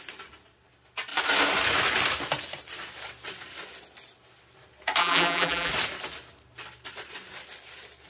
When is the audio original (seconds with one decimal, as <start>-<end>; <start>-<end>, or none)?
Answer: 0.0-5.0; 5.7-8.1

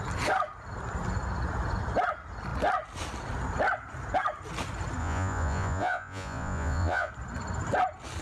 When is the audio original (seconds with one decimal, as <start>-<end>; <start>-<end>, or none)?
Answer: 0.0-5.0; 7.1-8.2

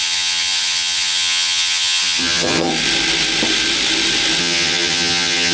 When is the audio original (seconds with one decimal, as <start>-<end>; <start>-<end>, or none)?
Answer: 2.7-4.4

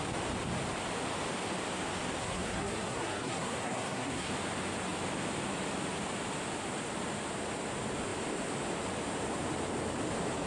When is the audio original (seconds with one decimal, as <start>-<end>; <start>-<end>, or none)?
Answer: 0.0-2.2; 4.3-10.5